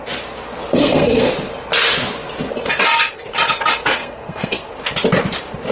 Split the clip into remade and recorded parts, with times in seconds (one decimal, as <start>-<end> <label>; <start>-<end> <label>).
0.0-0.8 recorded; 0.8-1.3 remade; 1.3-4.0 recorded; 4.0-4.7 remade; 4.7-5.7 recorded